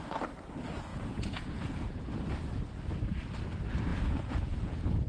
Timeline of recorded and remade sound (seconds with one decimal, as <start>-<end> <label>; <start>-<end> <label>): 0.0-0.9 recorded; 0.9-2.1 remade; 2.1-3.9 recorded; 3.9-5.1 remade